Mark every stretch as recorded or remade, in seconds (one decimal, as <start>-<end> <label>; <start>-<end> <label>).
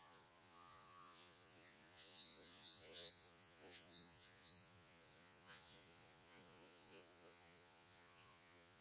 0.0-8.8 remade